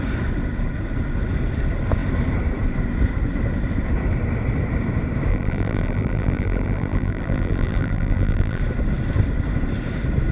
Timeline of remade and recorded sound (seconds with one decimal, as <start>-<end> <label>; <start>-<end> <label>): 0.0-5.3 recorded; 5.3-8.6 remade; 8.6-10.3 recorded